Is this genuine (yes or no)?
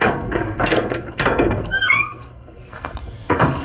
no